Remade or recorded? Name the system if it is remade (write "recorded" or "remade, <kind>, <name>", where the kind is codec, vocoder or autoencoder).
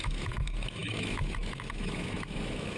remade, autoencoder, DAC-VAE